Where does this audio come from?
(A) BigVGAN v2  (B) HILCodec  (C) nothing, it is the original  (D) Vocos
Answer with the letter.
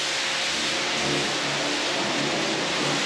C